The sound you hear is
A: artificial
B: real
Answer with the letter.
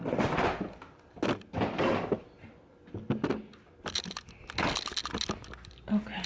B